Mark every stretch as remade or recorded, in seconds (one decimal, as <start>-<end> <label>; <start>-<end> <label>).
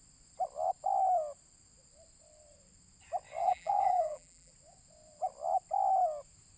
0.0-3.4 recorded; 3.4-4.5 remade; 4.5-6.6 recorded